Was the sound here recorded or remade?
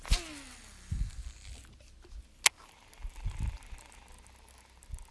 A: recorded